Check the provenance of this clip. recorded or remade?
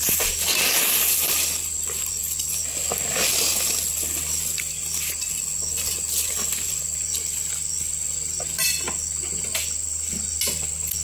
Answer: recorded